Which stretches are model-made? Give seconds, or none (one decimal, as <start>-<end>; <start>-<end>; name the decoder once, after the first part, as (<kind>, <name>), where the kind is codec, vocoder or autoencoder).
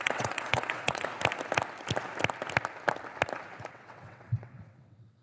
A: 0.0-1.1 (vocoder, WaveNeXt); 3.7-5.2